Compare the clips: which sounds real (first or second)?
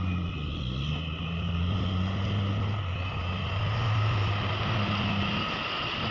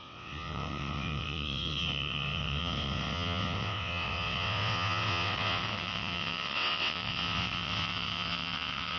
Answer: first